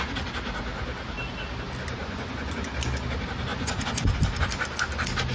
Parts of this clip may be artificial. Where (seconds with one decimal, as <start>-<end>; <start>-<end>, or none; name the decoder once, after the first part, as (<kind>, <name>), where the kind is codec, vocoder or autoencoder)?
2.0-2.7 (vocoder, Vocos); 3.5-4.1